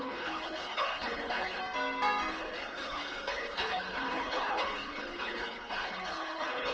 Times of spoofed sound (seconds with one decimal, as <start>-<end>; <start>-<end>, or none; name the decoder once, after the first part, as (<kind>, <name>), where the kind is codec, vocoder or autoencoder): 0.0-1.6 (codec, HILCodec); 2.3-6.7